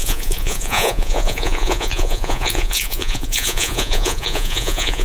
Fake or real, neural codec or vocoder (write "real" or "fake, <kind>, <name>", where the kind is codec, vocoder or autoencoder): fake, vocoder, Vocos